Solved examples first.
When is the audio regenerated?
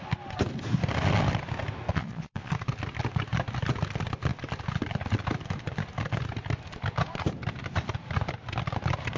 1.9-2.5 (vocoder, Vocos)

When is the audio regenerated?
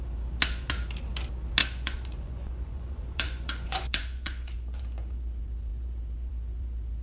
1.6-4.8 (vocoder, Vocos)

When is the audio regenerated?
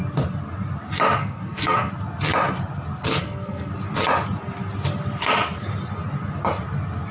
1.2-1.9 (codec, SNAC); 3.2-3.7